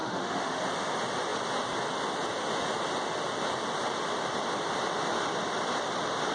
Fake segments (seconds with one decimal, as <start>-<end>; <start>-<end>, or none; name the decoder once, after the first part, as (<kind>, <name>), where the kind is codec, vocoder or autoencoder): 0.0-0.6 (autoencoder, DAC-VAE)